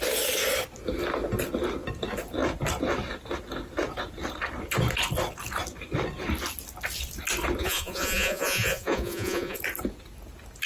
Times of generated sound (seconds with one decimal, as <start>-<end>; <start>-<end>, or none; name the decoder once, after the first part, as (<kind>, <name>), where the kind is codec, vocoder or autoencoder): 7.6-9.6 (vocoder, Vocos)